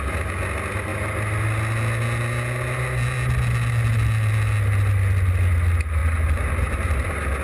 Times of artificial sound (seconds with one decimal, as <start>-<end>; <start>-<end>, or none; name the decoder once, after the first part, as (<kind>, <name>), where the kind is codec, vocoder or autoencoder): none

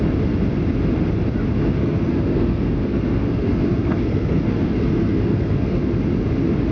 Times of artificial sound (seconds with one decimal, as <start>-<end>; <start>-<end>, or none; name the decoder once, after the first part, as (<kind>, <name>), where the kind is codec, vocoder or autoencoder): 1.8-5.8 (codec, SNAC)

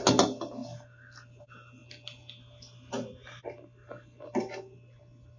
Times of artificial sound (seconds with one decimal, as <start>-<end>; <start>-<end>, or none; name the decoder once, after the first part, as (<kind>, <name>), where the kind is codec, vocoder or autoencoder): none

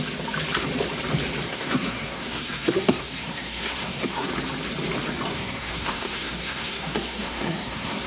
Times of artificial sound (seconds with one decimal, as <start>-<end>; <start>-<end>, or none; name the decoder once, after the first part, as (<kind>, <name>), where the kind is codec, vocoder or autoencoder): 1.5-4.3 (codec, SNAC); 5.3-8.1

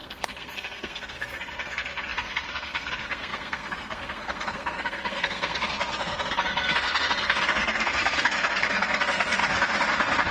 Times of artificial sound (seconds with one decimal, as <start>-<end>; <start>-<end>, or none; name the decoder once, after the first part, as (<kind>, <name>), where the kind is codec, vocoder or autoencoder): 0.0-9.4 (codec, SNAC)

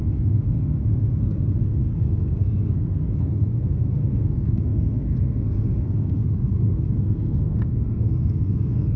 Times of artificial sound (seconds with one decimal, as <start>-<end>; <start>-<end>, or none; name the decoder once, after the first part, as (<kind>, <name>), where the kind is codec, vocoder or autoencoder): 0.0-9.0 (codec, SNAC)

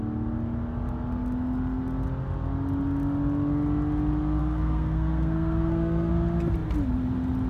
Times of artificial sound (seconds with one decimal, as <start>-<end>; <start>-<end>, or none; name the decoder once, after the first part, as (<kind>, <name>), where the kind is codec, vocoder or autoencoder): 4.4-6.1 (codec, SNAC)

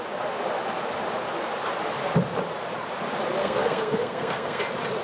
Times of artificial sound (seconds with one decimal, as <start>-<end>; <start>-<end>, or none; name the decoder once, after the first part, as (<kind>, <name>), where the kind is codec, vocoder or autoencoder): 3.4-4.6 (codec, SNAC)